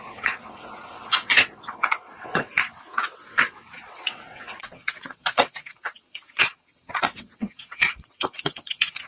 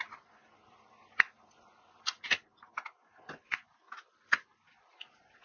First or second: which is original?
second